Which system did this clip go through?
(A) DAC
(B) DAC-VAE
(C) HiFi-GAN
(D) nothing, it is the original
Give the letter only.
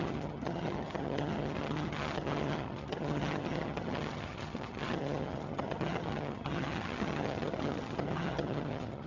C